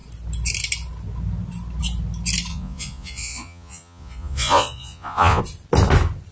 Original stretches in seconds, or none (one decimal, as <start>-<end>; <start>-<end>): 0.0-2.5; 5.4-6.3